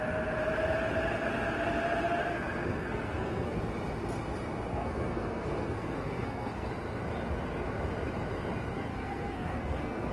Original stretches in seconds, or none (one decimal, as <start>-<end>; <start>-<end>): 0.0-2.3; 3.6-4.7; 6.7-8.9